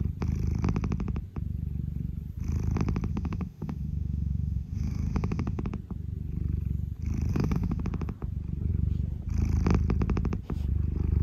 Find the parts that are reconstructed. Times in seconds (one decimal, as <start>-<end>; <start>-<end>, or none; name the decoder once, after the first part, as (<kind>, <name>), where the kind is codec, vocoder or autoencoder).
3.1-5.6 (autoencoder, DAC-VAE); 7.3-7.8

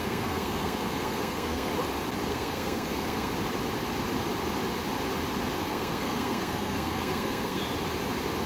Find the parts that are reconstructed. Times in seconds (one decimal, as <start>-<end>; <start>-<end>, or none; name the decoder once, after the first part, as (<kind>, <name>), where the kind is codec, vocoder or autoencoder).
0.0-1.7 (codec, SNAC); 2.3-3.3; 5.6-7.6